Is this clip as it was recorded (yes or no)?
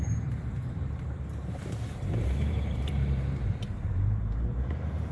no